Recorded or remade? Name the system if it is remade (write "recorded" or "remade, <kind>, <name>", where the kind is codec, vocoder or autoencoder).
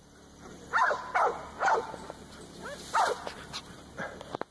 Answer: recorded